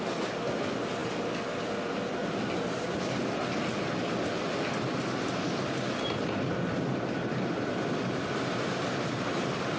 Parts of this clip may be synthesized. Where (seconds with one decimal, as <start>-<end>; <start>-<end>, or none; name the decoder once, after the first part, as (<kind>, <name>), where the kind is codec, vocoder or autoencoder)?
none